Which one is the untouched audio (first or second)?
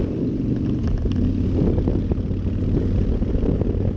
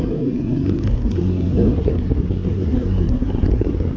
first